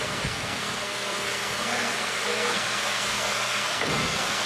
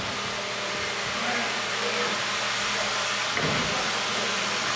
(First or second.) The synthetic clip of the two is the first